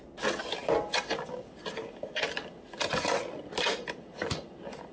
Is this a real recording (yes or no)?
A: yes